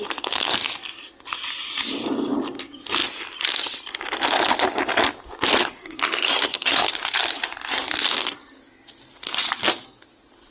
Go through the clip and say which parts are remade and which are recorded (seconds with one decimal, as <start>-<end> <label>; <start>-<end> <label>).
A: 0.0-5.6 recorded; 5.6-6.9 remade; 6.9-10.5 recorded